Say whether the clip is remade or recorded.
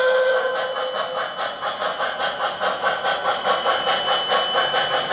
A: recorded